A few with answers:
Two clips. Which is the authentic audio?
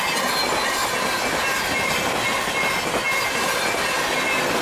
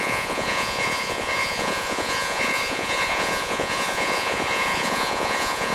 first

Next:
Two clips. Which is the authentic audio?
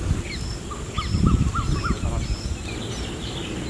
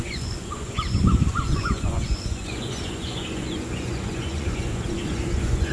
first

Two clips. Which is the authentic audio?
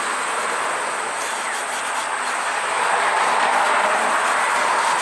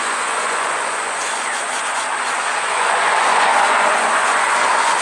first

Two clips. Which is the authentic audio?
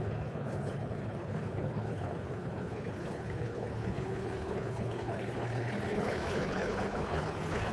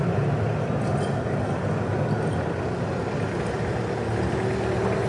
second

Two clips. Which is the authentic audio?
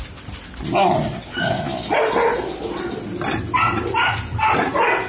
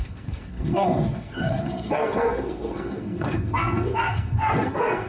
first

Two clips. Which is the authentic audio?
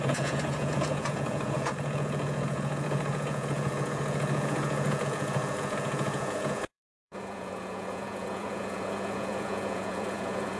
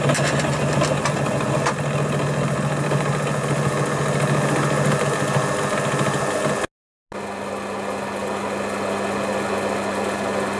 second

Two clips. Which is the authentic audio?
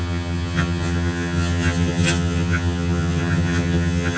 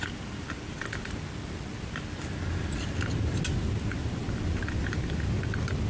second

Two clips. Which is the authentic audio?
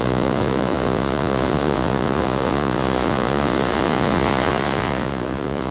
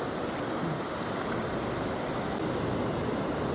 second